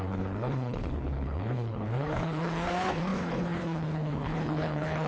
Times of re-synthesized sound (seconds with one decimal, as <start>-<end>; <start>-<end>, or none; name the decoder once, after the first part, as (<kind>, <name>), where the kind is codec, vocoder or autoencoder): 0.0-5.1 (codec, HILCodec)